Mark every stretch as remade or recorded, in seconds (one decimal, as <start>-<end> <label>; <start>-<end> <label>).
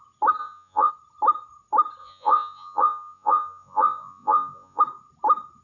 0.0-0.4 recorded; 0.4-0.9 remade; 0.9-2.0 recorded; 2.0-4.8 remade; 4.8-5.6 recorded